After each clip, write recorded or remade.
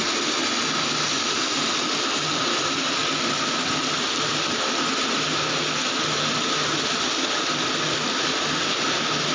recorded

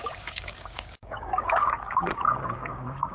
remade